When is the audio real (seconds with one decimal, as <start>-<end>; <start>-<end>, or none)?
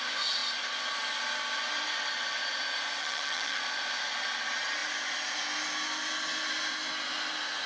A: 0.0-3.0; 3.6-7.7